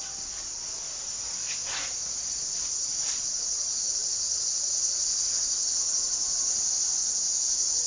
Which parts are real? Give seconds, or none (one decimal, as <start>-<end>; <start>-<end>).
0.0-2.8; 6.6-7.9